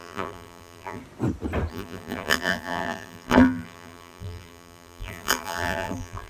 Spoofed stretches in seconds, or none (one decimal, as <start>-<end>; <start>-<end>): 0.0-1.0; 1.7-6.3

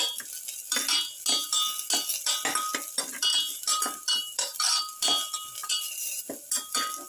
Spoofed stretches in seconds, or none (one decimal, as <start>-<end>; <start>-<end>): 3.3-4.8; 5.6-6.2

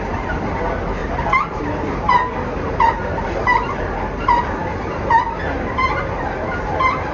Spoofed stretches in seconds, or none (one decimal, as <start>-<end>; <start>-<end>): 1.0-1.6; 3.0-4.4

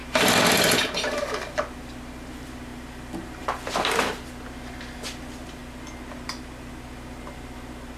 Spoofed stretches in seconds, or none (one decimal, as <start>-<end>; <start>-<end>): 0.0-0.8; 2.7-4.3

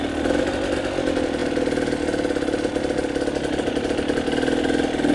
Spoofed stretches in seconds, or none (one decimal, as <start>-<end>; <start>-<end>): none

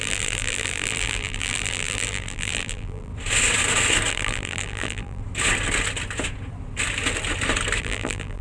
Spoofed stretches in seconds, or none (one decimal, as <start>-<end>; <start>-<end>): 0.0-3.1; 4.1-5.2; 7.8-8.4